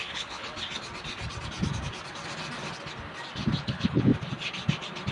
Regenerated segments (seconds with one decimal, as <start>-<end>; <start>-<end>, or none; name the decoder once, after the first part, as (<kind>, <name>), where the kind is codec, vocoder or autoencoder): 0.0-0.5 (codec, HILCodec); 3.6-4.1